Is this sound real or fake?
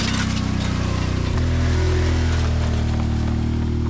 real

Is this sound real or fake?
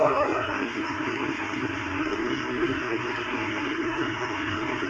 fake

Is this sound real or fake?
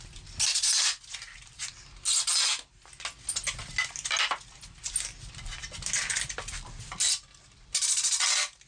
real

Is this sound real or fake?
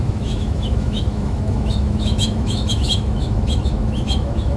fake